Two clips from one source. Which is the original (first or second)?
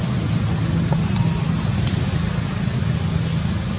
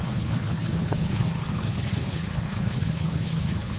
first